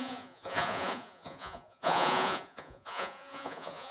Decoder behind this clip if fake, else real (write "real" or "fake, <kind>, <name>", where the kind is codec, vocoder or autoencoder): fake, vocoder, Vocos